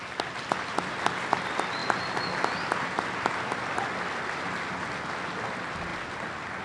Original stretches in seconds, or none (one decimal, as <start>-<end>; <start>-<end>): 0.0-6.6

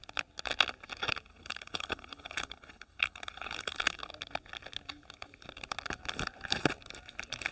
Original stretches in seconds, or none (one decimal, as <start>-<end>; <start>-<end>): 0.0-1.3; 4.1-7.5

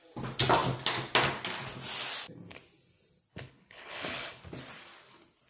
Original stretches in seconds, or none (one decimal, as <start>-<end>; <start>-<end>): 0.0-3.3; 4.4-5.5

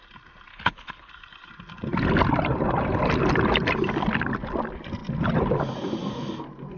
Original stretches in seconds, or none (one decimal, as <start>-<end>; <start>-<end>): 0.0-0.5; 1.1-6.8

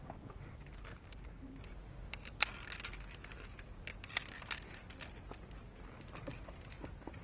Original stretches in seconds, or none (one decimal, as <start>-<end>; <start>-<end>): 0.0-7.2

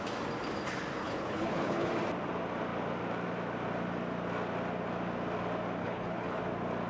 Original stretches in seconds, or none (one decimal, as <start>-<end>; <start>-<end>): 0.0-1.0; 1.9-5.8; 6.4-6.9

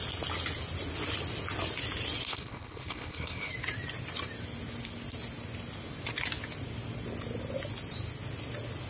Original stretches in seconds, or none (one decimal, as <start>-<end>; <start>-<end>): 0.0-2.3; 3.5-8.9